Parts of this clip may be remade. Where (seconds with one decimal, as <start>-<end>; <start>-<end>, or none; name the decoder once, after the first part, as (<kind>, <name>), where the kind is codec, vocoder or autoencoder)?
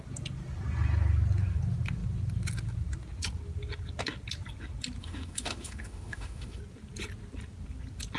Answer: 5.0-6.6 (autoencoder, DAC-VAE)